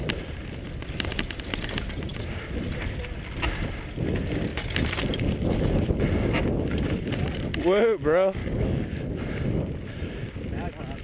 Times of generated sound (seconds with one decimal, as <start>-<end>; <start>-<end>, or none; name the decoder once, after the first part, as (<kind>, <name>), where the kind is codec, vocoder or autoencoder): 8.4-9.0 (codec, DAC)